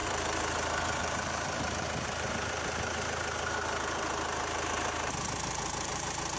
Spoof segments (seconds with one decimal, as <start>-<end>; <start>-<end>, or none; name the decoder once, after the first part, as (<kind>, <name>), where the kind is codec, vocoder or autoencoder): 0.0-6.4 (vocoder, BigVGAN v2)